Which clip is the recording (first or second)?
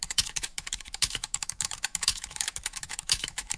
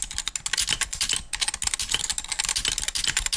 second